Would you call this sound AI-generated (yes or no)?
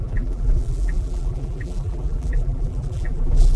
yes